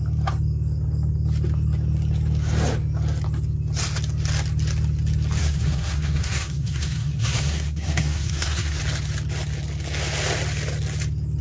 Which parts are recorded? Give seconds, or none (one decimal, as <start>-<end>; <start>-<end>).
0.0-5.4; 8.8-11.4